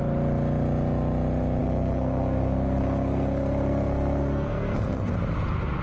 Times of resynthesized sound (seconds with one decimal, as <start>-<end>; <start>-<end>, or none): 1.6-5.1